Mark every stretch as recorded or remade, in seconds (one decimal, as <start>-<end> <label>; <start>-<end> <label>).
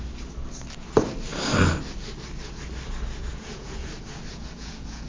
0.0-3.3 recorded; 3.3-3.9 remade; 3.9-4.3 recorded; 4.3-5.1 remade